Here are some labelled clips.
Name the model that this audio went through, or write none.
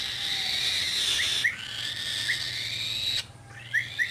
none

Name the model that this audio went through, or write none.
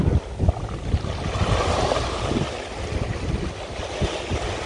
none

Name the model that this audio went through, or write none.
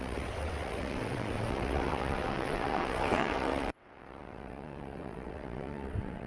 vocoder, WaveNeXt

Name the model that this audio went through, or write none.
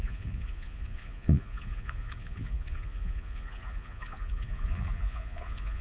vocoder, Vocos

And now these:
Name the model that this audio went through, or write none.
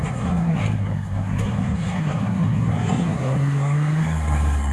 codec, SNAC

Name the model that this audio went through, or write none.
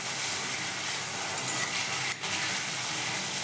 none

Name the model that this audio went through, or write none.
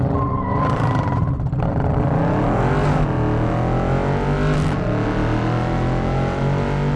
none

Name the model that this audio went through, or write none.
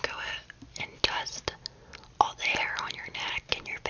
none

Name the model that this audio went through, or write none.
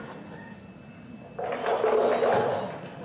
none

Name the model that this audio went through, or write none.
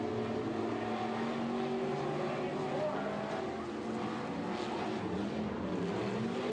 none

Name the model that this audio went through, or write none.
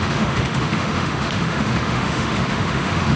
autoencoder, DAC-VAE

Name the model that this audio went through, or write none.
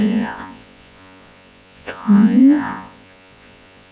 vocoder, Vocos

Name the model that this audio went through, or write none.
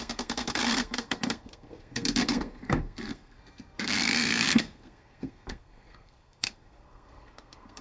codec, SNAC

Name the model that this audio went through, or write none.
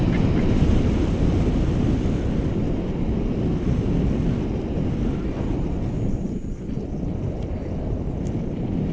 none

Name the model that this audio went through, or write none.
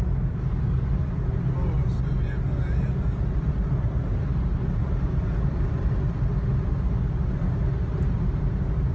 none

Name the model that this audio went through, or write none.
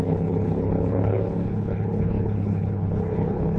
codec, HILCodec